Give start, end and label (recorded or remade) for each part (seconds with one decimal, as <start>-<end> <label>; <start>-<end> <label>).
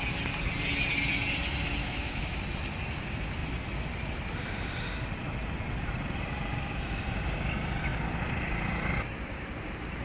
0.0-1.8 recorded; 1.8-2.4 remade; 2.4-10.0 recorded